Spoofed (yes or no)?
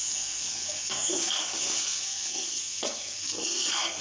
yes